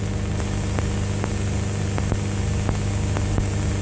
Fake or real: real